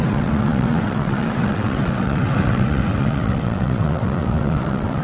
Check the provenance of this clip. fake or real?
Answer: fake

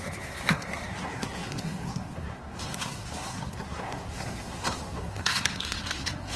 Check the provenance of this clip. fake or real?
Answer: fake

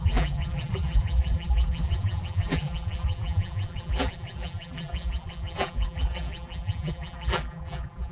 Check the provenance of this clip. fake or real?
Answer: fake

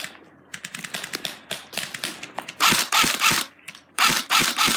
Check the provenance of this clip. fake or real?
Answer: fake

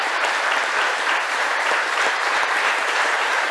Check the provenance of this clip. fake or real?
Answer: fake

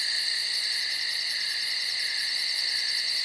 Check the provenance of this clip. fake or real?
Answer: real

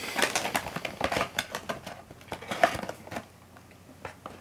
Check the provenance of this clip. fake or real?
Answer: real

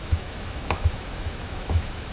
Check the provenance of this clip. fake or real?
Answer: fake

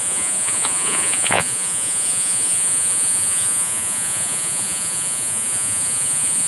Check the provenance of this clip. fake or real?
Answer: fake